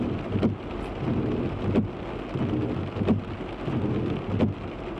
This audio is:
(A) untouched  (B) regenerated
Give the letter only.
A